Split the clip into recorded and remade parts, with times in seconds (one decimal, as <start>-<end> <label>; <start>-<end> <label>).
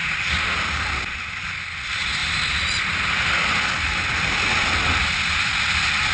0.0-6.1 recorded